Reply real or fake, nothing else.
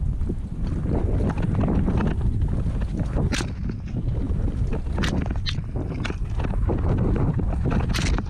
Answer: real